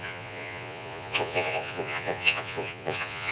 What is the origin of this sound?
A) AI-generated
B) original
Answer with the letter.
A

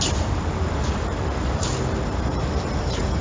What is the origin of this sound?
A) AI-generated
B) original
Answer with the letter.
B